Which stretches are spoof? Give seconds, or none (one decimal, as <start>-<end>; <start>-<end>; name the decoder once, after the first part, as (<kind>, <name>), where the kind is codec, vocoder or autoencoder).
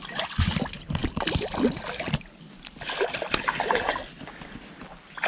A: none